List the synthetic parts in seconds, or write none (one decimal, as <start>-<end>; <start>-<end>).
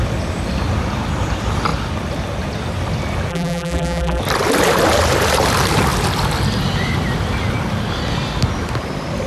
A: 3.3-4.2